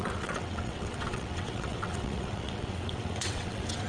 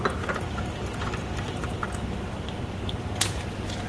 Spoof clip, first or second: first